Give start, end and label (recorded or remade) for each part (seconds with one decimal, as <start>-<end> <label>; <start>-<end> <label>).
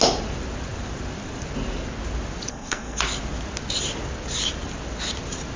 0.0-2.5 recorded; 2.5-3.0 remade; 3.0-5.6 recorded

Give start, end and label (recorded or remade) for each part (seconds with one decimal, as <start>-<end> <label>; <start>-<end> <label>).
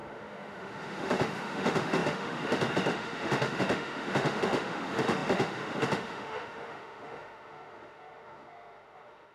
0.0-9.3 remade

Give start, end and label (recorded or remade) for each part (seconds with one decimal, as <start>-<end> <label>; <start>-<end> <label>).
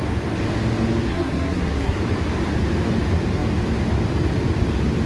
0.0-1.1 recorded; 1.1-2.0 remade; 2.0-5.1 recorded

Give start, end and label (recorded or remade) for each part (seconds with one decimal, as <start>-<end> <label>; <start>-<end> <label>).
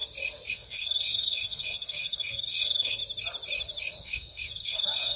0.0-0.5 recorded; 0.5-3.0 remade; 3.0-4.0 recorded; 4.0-5.2 remade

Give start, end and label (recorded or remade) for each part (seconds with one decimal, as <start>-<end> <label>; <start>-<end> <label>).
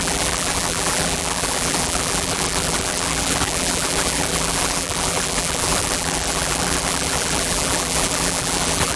0.0-9.0 remade